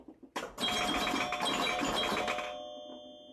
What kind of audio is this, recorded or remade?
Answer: recorded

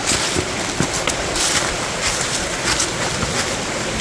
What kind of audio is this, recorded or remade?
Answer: recorded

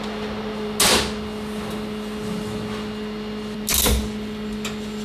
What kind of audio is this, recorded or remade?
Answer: recorded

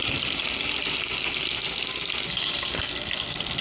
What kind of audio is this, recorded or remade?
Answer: recorded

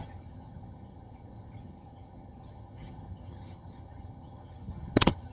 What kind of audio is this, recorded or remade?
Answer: remade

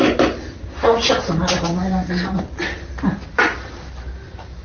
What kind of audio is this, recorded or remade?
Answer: recorded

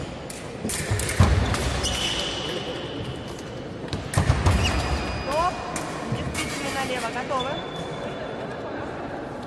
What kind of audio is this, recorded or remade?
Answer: recorded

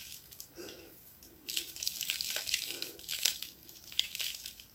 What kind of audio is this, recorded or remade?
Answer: remade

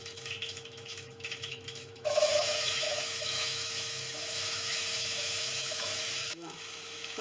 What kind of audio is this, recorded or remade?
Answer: remade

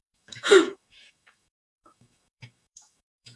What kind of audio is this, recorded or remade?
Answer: remade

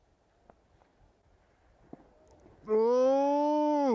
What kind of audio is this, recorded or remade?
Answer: recorded